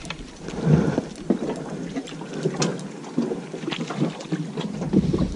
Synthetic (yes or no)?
no